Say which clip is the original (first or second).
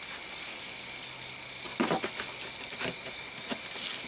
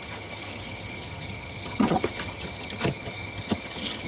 first